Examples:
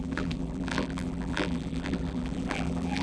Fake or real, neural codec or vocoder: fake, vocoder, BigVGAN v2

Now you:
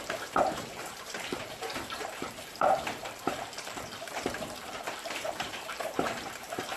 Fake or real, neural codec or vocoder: fake, vocoder, BigVGAN v2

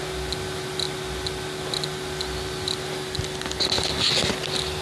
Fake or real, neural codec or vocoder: real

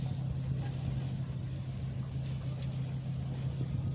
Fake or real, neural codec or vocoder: real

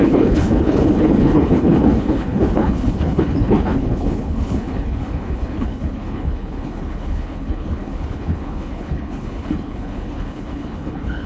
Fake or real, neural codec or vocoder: fake, codec, HILCodec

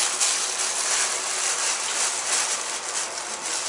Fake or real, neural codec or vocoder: real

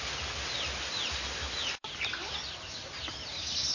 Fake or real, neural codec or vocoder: real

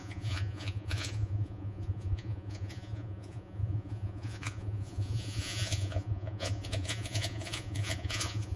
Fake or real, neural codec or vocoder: fake, vocoder, Vocos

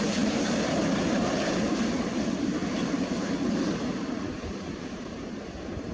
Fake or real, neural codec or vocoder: fake, vocoder, BigVGAN v2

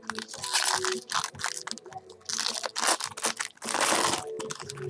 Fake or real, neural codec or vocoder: real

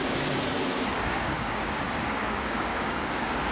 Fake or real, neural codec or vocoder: fake, codec, DAC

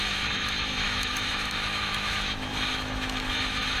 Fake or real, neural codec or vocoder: fake, autoencoder, DAC-VAE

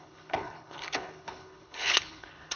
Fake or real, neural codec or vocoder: fake, codec, HILCodec